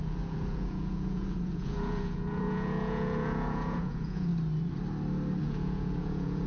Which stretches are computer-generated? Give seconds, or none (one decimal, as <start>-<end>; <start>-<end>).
0.0-4.3; 5.4-6.5